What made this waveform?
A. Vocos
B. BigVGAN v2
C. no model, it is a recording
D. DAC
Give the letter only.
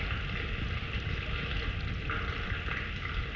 C